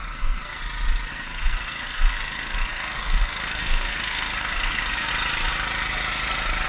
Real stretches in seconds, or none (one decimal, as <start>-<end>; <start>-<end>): 0.6-1.1; 5.1-6.7

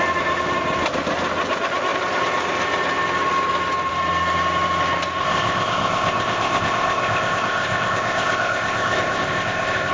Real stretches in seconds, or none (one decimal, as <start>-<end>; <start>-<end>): 0.0-5.2

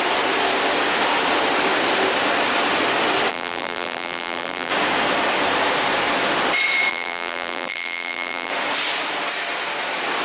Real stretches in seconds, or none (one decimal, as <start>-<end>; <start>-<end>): 0.0-3.3; 4.7-6.9; 8.5-10.2

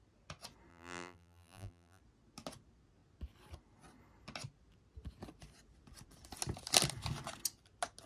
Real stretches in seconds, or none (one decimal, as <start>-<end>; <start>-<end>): 0.0-0.7; 2.0-8.1

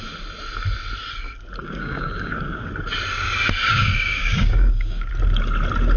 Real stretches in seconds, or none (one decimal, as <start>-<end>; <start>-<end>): 0.0-1.6; 2.7-3.8; 5.1-6.0

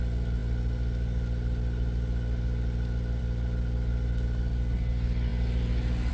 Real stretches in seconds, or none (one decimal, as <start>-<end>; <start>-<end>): 0.0-6.1